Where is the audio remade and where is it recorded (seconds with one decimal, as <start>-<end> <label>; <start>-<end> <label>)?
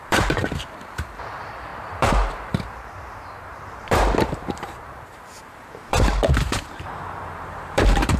0.0-8.2 remade